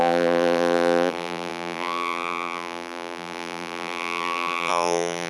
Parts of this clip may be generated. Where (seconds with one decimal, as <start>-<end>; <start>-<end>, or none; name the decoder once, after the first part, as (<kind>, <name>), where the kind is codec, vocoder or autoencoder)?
0.0-5.3 (vocoder, BigVGAN v2)